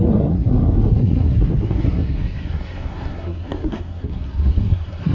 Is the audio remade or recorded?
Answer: remade